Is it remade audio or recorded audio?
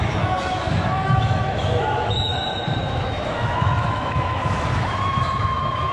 remade